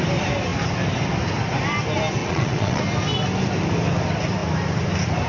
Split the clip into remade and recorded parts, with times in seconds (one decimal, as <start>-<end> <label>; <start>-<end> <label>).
0.0-2.2 recorded; 2.2-2.8 remade; 2.8-5.3 recorded